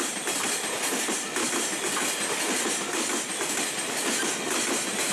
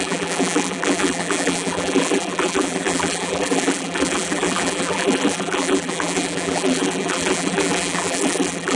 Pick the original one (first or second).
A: first